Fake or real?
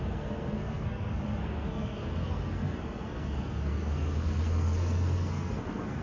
fake